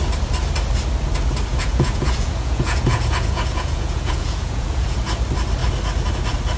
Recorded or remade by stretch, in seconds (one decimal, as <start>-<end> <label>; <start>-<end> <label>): 0.0-1.5 recorded; 1.5-5.0 remade; 5.0-6.6 recorded